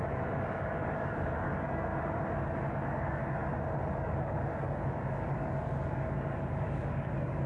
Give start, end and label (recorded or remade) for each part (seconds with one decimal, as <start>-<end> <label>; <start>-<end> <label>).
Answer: 0.0-1.9 remade; 1.9-2.7 recorded; 2.7-3.4 remade; 3.4-3.9 recorded; 3.9-7.5 remade